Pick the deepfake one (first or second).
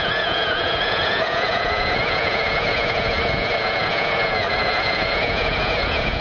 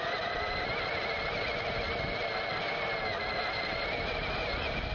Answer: first